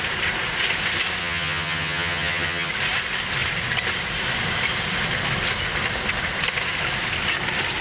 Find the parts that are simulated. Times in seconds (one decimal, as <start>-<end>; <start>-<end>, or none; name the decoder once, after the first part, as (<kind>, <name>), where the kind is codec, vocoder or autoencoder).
1.2-2.7 (vocoder, HiFi-GAN)